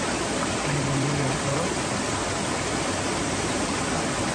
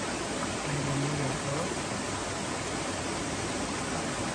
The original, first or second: second